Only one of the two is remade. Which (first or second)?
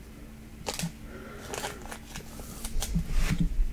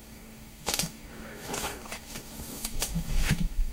second